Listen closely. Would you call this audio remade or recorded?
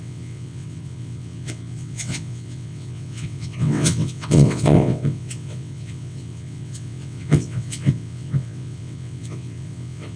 remade